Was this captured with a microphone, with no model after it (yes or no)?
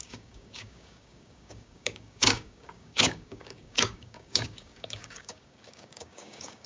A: no